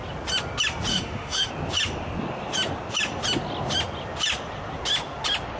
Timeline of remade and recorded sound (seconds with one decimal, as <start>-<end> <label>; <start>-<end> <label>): 0.0-0.9 recorded; 0.9-1.5 remade; 1.5-5.6 recorded